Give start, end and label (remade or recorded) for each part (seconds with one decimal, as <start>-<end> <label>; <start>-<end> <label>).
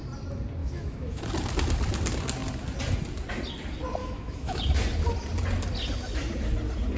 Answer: 0.0-0.6 recorded; 0.6-1.2 remade; 1.2-4.0 recorded; 4.0-4.6 remade; 4.6-7.0 recorded